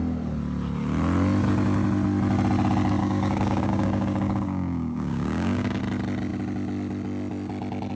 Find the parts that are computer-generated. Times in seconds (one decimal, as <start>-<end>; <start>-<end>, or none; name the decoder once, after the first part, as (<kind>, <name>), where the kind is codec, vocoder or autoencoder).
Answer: 3.0-5.8 (codec, DAC)